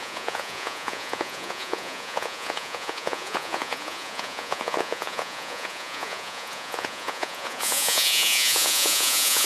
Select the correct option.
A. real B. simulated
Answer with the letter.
B